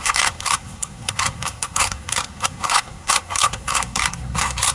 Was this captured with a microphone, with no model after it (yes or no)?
no